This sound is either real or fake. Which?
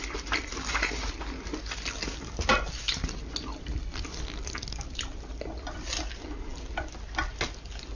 real